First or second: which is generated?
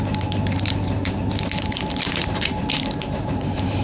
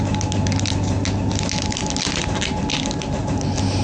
first